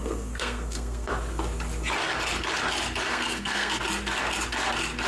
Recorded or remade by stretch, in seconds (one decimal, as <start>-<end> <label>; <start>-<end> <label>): 0.0-1.1 remade; 1.1-3.1 recorded; 3.1-3.8 remade; 3.8-5.1 recorded